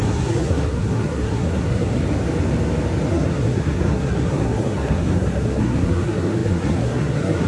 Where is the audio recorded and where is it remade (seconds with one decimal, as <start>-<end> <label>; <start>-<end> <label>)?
0.0-2.0 remade; 2.0-3.1 recorded; 3.1-7.5 remade

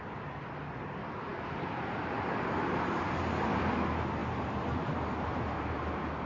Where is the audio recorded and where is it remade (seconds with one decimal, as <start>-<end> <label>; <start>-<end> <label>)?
0.0-6.3 recorded